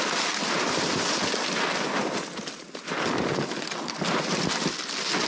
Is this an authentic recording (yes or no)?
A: yes